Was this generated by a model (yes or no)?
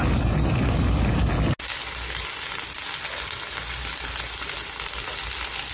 no